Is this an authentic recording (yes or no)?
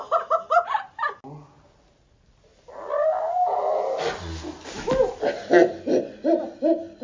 yes